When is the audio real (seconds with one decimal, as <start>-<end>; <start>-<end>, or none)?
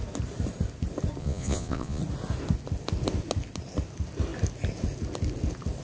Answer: 0.0-1.2; 2.0-5.8